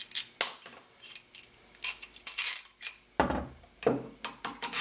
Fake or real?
real